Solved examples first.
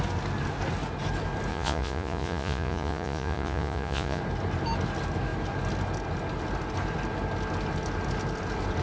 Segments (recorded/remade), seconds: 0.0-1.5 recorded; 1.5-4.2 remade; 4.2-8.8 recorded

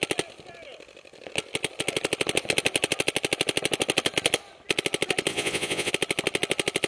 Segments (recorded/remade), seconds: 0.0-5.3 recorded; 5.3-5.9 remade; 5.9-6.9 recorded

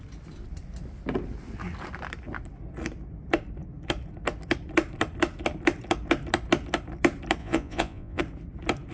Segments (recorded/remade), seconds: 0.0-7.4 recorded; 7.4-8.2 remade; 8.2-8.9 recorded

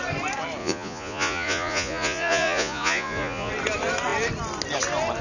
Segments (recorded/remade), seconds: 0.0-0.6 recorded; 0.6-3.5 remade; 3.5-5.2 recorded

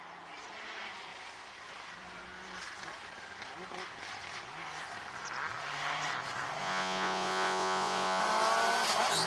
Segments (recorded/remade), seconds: 0.0-6.6 recorded; 6.6-8.2 remade; 8.2-9.3 recorded

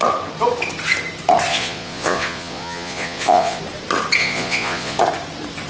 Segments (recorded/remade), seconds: 0.0-1.5 recorded; 1.5-3.6 remade; 3.6-4.2 recorded; 4.2-5.0 remade; 5.0-5.7 recorded